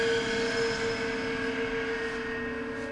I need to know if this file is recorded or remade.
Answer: recorded